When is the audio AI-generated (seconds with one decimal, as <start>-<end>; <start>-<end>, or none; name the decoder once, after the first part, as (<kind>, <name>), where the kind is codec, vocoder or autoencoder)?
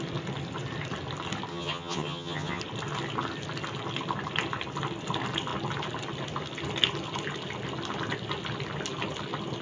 1.5-2.6 (vocoder, HiFi-GAN)